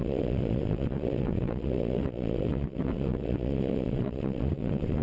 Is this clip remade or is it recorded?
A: remade